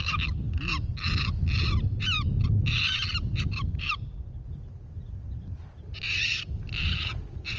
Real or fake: real